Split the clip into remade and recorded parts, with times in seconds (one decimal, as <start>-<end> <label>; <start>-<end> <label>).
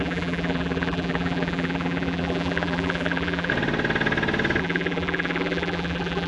0.0-3.5 remade; 3.5-4.6 recorded; 4.6-6.3 remade